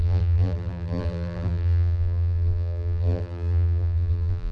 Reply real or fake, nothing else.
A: fake